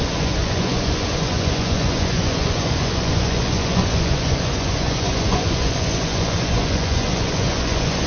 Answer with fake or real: fake